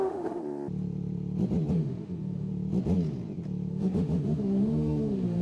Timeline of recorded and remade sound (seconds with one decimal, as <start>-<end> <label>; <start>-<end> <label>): 0.0-0.4 remade; 0.4-1.7 recorded; 1.7-2.5 remade; 2.5-3.7 recorded; 3.7-5.4 remade

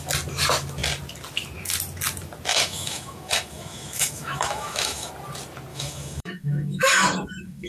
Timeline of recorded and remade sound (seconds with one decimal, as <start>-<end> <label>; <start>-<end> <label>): 0.0-2.5 recorded; 2.5-5.1 remade; 5.1-5.7 recorded; 5.7-7.7 remade

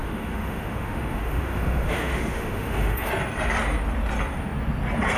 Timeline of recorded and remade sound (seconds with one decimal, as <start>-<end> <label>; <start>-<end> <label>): 0.0-3.1 remade; 3.1-5.2 recorded

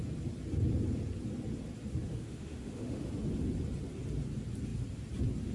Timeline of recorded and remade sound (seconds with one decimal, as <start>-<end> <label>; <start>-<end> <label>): 0.0-2.1 recorded; 2.1-3.1 remade; 3.1-5.5 recorded